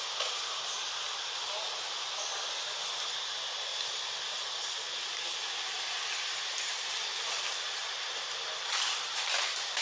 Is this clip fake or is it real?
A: real